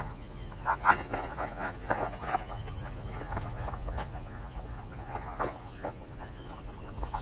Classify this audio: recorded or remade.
remade